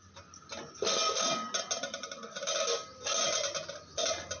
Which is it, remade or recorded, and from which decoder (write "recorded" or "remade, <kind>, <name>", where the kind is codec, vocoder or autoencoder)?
recorded